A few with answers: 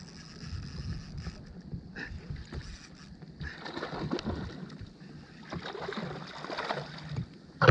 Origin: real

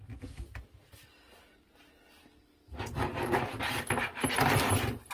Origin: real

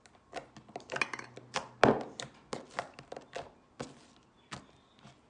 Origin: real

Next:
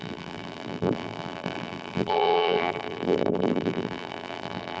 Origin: fake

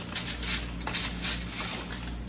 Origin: real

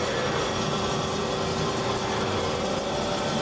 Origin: real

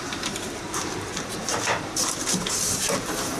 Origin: fake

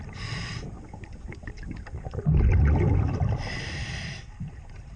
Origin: fake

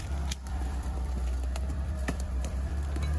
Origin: fake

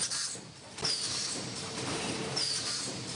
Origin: fake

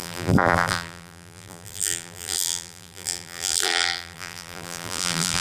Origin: fake